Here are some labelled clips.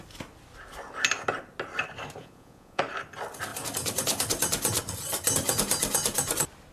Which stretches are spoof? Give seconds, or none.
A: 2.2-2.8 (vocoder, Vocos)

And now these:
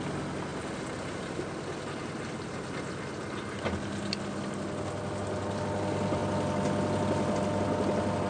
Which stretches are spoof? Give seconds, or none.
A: none

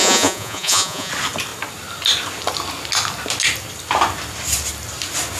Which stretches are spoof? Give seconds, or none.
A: 0.0-1.1 (vocoder, Vocos)

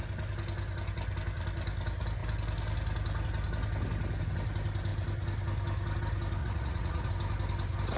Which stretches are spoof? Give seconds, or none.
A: 6.4-7.1 (vocoder, Vocos)

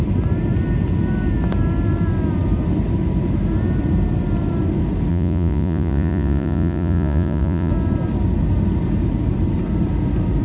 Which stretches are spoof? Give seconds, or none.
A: 5.1-7.7 (vocoder, Vocos)

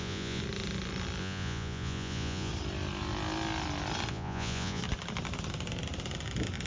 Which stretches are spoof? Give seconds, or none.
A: 0.0-0.4 (vocoder, Vocos); 1.2-2.5; 4.1-4.8

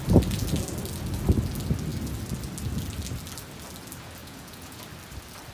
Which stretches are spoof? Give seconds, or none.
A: 4.2-4.8 (vocoder, Vocos)